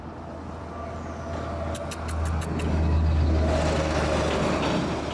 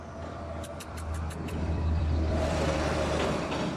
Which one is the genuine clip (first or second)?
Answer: first